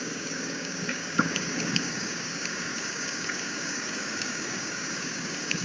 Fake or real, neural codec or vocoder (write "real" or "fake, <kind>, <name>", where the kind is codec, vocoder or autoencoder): fake, codec, DAC